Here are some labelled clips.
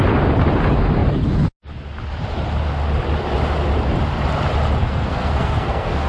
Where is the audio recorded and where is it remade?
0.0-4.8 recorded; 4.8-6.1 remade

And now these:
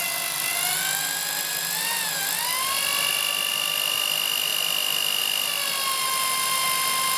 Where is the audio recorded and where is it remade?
0.0-7.2 recorded

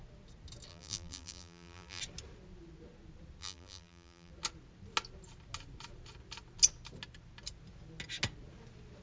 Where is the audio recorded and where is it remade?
0.0-0.7 recorded; 0.7-2.0 remade; 2.0-3.4 recorded; 3.4-4.3 remade; 4.3-9.0 recorded

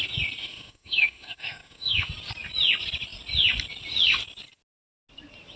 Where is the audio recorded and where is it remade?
0.0-0.4 recorded; 0.4-2.1 remade; 2.1-5.6 recorded

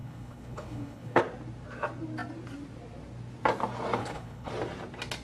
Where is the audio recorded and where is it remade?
0.0-1.2 remade; 1.2-4.0 recorded; 4.0-4.5 remade; 4.5-5.2 recorded

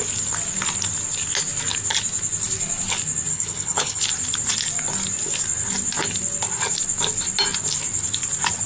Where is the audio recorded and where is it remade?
0.0-3.3 recorded; 3.3-4.0 remade; 4.0-8.7 recorded

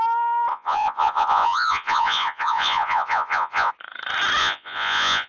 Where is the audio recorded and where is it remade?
0.0-0.5 recorded; 0.5-3.7 remade; 3.7-4.4 recorded; 4.4-5.3 remade

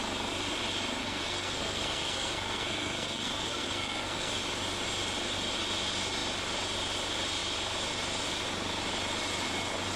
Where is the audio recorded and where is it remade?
0.0-1.0 recorded; 1.0-4.3 remade; 4.3-10.0 recorded